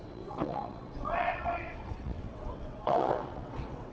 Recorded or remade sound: remade